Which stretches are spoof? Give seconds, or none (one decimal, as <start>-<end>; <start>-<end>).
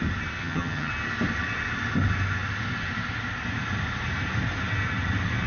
0.4-0.9